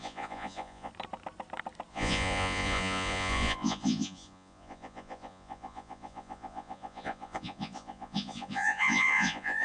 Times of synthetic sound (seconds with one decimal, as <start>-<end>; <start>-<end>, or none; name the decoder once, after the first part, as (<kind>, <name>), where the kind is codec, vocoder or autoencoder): 0.0-0.9 (vocoder, Vocos); 1.9-9.6